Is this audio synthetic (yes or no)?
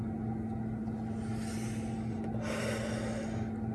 no